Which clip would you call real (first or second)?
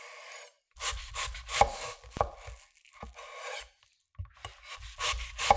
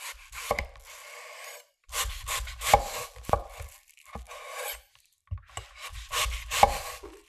first